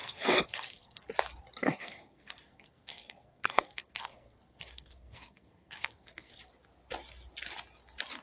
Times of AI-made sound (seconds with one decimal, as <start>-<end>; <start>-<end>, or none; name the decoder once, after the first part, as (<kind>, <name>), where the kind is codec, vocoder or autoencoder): 0.0-1.0 (codec, SNAC); 1.6-6.5